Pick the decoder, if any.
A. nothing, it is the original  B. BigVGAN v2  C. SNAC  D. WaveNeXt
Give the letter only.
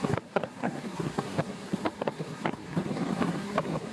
C